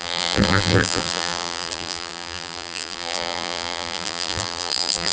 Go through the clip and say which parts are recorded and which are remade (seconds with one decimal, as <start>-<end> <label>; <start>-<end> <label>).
0.0-5.1 remade